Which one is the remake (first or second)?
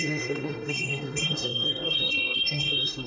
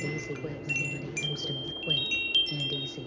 first